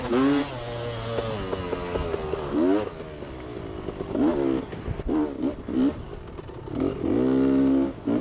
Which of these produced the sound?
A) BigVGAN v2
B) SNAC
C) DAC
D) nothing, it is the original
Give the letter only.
D